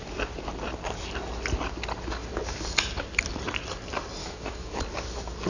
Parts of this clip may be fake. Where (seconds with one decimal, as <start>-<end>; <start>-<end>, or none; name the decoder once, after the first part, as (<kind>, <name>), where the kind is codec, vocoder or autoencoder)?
4.2-4.8 (autoencoder, DAC-VAE)